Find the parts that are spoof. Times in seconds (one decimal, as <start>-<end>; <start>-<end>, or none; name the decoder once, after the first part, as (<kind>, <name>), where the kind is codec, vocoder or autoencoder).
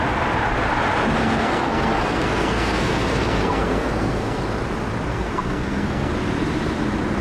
1.2-4.4 (codec, SNAC); 5.1-6.1